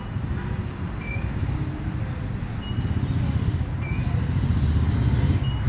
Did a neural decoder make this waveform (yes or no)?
no